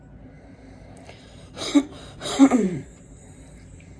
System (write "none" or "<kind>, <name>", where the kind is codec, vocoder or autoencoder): vocoder, BigVGAN v2